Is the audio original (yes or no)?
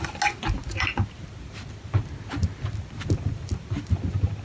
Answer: yes